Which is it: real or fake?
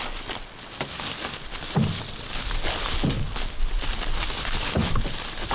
real